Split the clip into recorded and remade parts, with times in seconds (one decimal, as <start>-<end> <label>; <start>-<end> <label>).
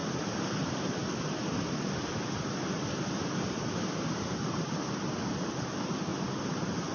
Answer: 0.0-6.9 recorded